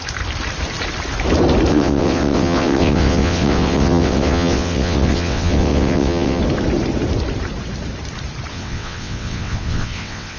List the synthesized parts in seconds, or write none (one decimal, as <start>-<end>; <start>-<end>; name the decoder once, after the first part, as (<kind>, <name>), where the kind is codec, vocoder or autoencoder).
1.7-6.4 (vocoder, WaveNeXt); 8.5-10.4